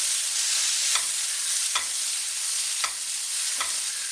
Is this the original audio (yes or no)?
yes